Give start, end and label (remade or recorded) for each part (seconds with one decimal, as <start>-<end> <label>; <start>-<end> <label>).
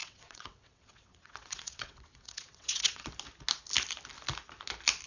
0.0-3.1 remade; 3.1-5.1 recorded